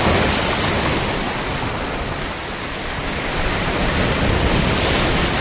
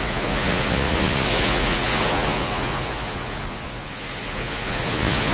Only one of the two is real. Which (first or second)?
first